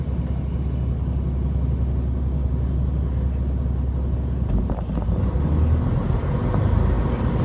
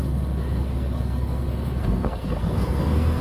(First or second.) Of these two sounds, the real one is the first